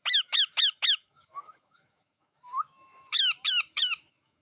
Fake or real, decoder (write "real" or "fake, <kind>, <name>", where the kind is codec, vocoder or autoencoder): fake, autoencoder, DAC-VAE